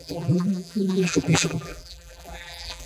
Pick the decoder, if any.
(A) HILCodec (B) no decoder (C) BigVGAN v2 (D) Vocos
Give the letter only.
C